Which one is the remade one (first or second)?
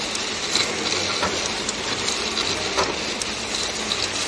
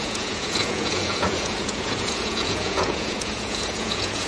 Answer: second